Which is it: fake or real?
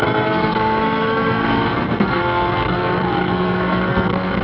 fake